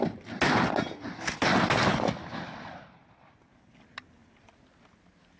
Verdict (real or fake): real